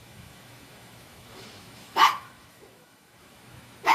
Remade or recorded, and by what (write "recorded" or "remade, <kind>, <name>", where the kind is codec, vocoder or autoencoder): remade, autoencoder, DAC-VAE